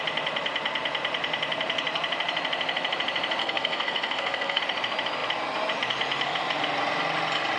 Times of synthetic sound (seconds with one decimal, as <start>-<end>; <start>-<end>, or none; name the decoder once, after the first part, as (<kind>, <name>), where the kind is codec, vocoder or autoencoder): 3.4-4.6 (codec, SNAC)